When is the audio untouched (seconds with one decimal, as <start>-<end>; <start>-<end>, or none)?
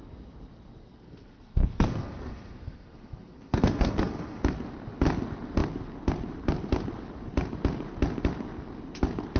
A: 0.0-0.9; 4.4-9.4